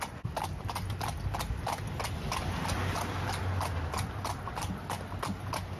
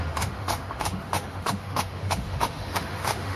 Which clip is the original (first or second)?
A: first